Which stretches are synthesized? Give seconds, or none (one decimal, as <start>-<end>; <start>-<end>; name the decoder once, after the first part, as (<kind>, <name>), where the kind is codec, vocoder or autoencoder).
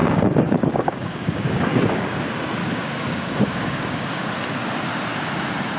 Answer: 0.0-2.2 (codec, DAC); 2.6-4.3